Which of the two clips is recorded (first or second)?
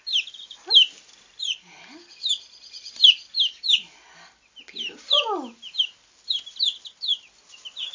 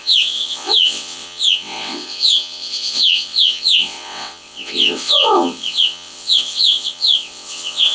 first